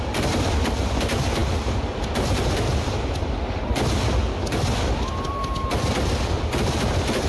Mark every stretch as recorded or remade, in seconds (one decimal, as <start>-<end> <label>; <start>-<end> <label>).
0.0-7.3 recorded